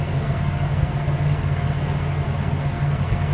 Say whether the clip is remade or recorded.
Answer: remade